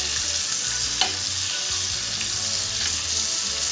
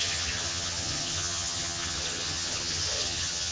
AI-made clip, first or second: second